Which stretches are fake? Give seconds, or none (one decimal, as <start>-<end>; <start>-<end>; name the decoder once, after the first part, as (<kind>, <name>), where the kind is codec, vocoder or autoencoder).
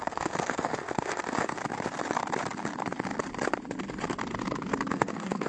0.0-1.6 (autoencoder, DAC-VAE); 4.9-5.5